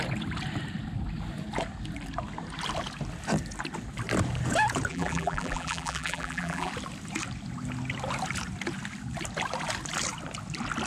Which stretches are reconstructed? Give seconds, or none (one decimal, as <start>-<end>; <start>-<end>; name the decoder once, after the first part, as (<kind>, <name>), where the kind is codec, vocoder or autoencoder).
4.9-6.7 (vocoder, BigVGAN v2)